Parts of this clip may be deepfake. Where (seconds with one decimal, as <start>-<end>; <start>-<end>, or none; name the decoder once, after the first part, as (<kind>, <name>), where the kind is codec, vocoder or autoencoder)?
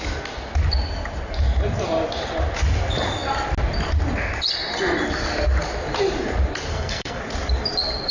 6.7-7.2 (codec, SNAC)